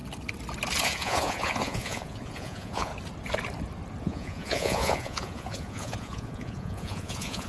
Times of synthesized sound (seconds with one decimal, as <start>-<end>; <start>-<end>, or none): 0.8-2.9; 4.0-7.5